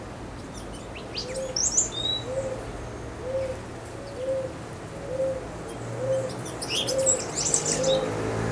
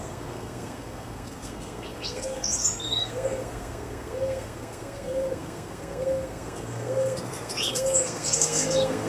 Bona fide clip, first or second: first